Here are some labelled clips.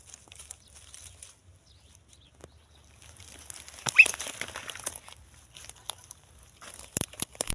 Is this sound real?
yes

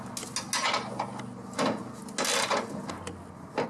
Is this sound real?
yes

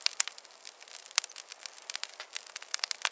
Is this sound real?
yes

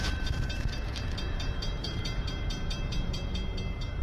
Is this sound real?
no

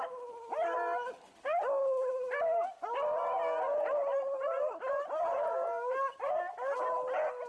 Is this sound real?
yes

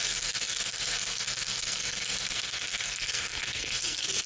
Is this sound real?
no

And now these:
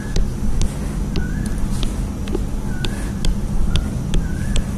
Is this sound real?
yes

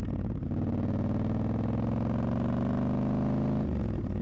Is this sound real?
yes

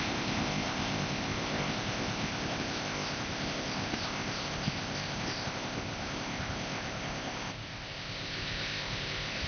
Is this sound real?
no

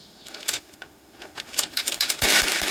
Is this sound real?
no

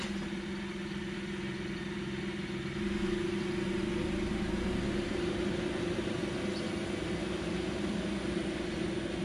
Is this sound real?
yes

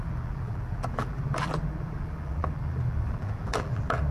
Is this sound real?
no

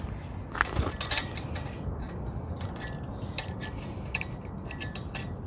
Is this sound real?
yes